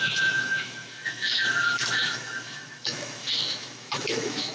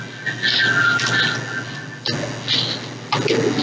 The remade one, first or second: first